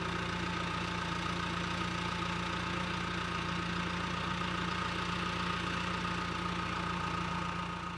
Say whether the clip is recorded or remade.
recorded